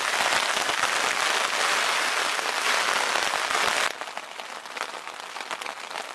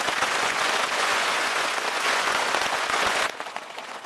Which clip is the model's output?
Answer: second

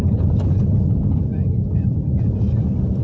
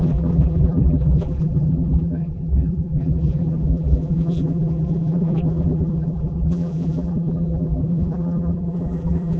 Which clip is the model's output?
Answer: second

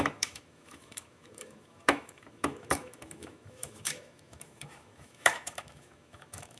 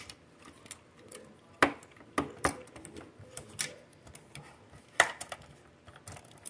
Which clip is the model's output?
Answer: first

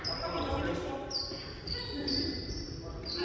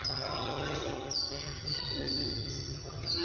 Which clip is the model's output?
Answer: second